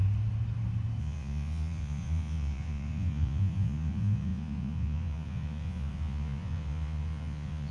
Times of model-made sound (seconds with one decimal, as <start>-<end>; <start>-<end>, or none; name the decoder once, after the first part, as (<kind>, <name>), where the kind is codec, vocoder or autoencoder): 1.0-7.7 (vocoder, Vocos)